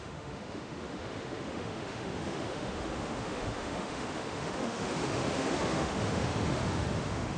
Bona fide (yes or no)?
no